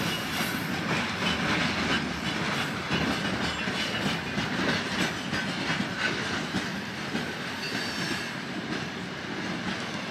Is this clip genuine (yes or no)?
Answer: yes